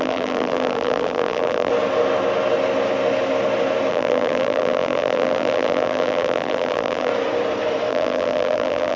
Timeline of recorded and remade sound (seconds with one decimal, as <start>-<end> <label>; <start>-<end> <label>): 0.0-1.7 remade; 1.7-3.9 recorded; 3.9-7.1 remade; 7.1-7.9 recorded; 7.9-9.0 remade